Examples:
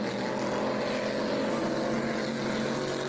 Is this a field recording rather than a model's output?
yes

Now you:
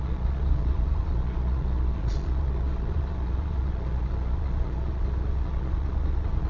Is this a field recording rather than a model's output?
no